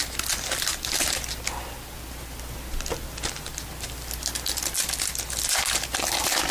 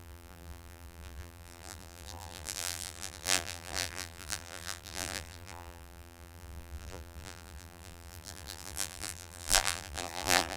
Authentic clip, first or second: first